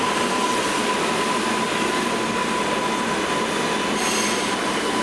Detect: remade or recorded recorded